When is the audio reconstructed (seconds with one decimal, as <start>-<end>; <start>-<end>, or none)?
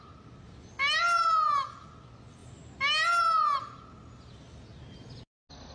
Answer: none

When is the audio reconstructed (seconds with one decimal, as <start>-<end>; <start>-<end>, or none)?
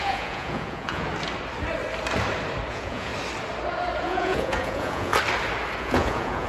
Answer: 0.0-1.1; 2.7-3.1; 4.0-5.1; 5.8-6.5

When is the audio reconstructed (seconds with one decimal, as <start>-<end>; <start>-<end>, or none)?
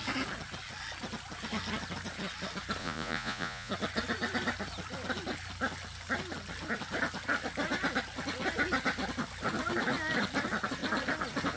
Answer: 2.8-3.7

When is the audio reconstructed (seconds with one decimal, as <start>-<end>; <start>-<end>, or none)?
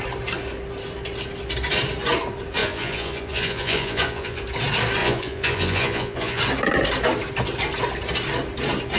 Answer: 2.6-4.4; 5.0-6.4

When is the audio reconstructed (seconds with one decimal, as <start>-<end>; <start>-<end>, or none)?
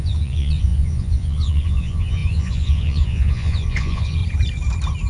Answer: 0.0-4.2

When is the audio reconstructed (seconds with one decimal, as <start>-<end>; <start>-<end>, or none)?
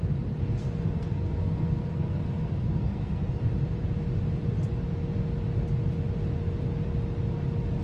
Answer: 0.6-3.4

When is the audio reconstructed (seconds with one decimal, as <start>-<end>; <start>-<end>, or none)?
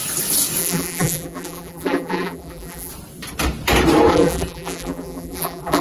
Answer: 0.6-2.9; 4.1-5.8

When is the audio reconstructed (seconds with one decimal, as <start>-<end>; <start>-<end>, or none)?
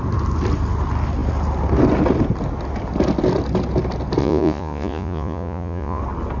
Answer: 4.2-6.0